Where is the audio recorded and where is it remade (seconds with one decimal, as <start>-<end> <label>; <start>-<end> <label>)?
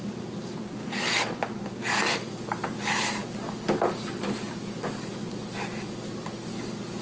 0.0-7.0 recorded